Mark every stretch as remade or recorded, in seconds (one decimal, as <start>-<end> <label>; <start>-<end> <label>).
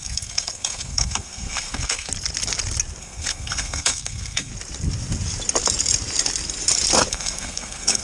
0.0-2.1 remade; 2.1-3.0 recorded; 3.0-4.5 remade; 4.5-7.1 recorded; 7.1-8.0 remade